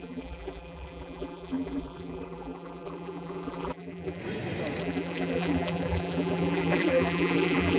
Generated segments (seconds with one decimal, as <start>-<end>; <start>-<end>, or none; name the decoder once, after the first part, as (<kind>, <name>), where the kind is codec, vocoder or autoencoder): 0.0-4.2 (vocoder, BigVGAN v2); 4.8-7.8